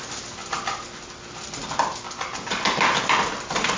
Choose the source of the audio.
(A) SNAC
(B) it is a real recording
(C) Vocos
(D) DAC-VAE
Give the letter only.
B